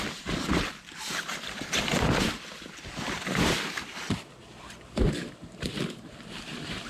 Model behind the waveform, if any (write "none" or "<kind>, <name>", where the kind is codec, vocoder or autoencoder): vocoder, BigVGAN v2